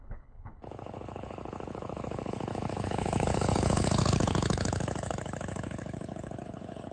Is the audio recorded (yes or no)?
no